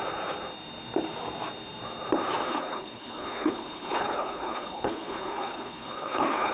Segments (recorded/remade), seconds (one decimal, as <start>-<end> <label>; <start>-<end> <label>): 0.0-2.5 recorded; 2.5-6.5 remade